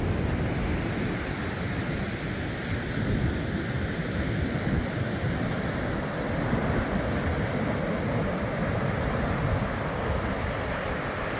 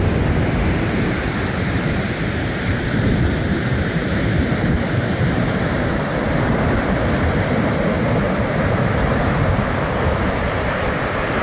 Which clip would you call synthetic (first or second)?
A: second